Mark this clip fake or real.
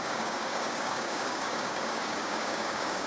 fake